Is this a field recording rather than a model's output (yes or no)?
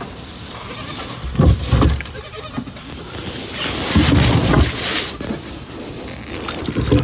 yes